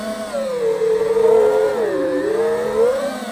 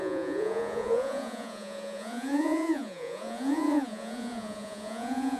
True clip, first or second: first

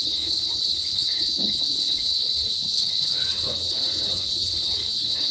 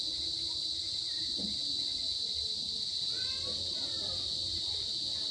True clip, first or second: second